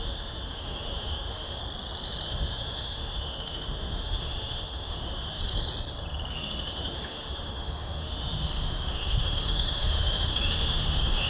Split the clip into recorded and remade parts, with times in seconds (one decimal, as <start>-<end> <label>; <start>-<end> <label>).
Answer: 0.0-1.6 remade; 1.6-2.3 recorded; 2.3-5.4 remade; 5.4-6.3 recorded; 6.3-11.3 remade